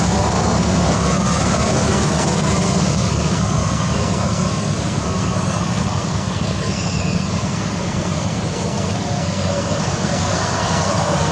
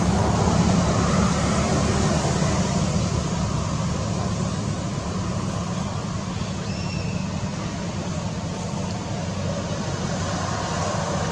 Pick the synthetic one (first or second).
first